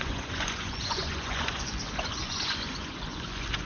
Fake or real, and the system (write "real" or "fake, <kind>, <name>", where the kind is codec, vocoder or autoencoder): fake, vocoder, Vocos